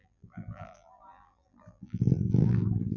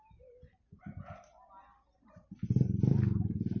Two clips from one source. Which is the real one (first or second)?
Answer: second